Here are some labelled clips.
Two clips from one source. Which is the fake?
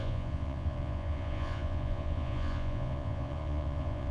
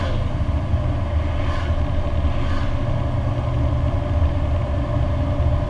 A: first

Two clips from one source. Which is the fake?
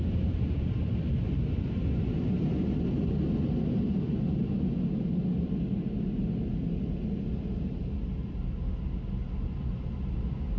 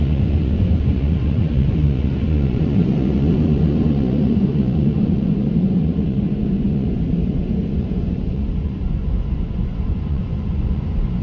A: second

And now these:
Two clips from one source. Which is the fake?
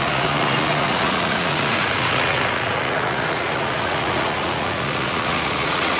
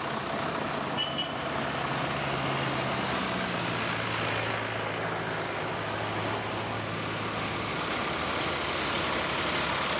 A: first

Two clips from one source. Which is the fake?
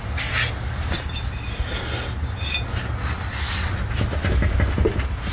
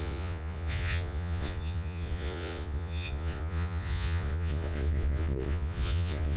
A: second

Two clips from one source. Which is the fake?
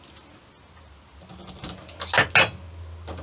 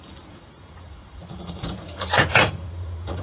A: second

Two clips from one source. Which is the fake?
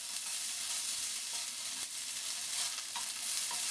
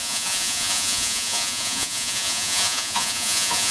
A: second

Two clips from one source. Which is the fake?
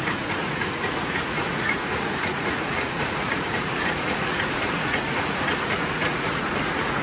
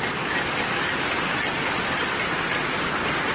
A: first